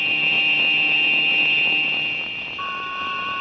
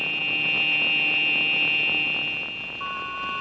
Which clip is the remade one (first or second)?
first